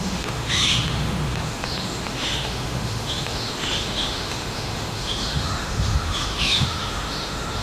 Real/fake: fake